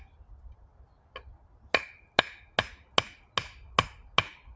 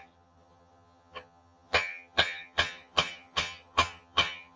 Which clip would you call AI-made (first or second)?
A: second